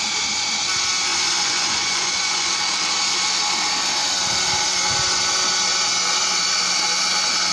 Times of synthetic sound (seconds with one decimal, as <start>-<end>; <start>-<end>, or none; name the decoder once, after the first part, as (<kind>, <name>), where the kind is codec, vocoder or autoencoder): 1.1-2.6 (vocoder, Vocos)